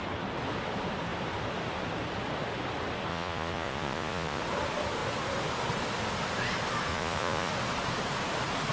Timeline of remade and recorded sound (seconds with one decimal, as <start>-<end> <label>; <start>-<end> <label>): 0.0-3.1 recorded; 3.1-4.4 remade; 4.4-6.9 recorded; 6.9-7.5 remade; 7.5-8.7 recorded